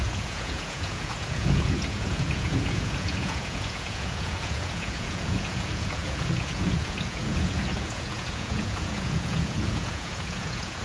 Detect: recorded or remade remade